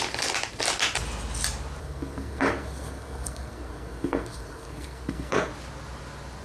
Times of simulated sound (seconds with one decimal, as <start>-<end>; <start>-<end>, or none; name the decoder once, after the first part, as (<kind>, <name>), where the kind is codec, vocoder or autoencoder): 1.8-5.5 (codec, SNAC)